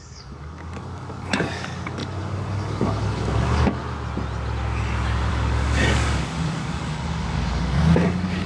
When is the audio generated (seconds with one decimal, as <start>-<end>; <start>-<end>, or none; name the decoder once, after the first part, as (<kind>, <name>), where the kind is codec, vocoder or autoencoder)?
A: 0.0-3.8 (codec, DAC); 5.3-8.5